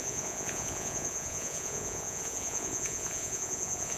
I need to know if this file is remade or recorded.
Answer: remade